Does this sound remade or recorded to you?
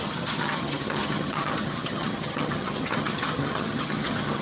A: remade